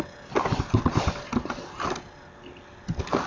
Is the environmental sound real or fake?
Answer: real